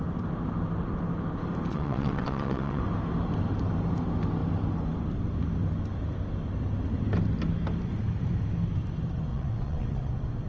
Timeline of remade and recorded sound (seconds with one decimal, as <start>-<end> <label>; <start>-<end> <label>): 0.0-1.7 recorded; 1.7-2.8 remade; 2.8-9.3 recorded; 9.3-10.1 remade; 10.1-10.5 recorded